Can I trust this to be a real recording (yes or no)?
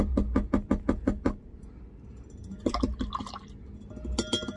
yes